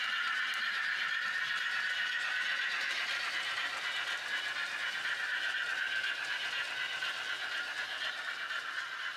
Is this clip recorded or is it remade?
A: recorded